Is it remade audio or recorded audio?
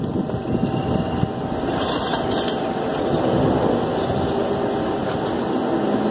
recorded